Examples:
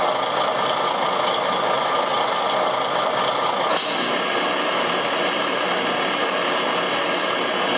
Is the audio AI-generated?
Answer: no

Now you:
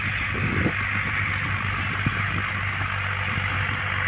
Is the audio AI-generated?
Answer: no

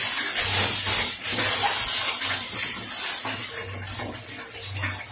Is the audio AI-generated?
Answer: no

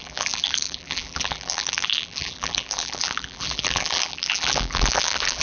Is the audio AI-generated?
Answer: yes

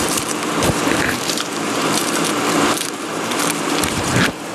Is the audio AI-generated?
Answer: yes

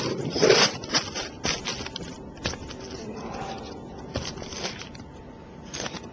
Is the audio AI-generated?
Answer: no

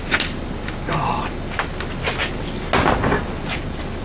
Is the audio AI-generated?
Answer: no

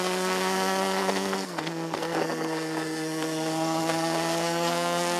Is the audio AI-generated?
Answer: yes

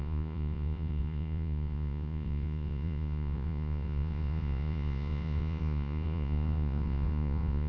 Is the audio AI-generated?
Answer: yes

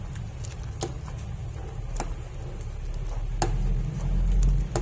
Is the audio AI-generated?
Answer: no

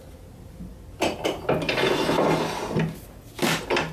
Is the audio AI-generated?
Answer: no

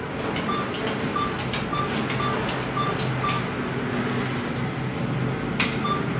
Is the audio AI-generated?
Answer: no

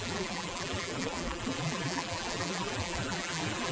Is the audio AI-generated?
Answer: yes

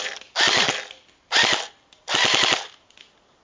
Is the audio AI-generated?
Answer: no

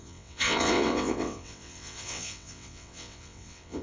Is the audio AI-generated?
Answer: yes